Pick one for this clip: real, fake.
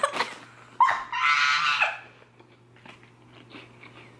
real